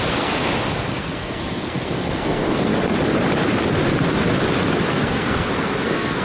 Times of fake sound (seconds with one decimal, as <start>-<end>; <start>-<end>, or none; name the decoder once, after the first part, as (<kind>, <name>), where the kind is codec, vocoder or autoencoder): 0.0-0.4 (codec, SNAC); 0.9-2.7; 4.9-6.2